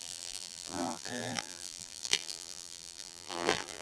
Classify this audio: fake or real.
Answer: fake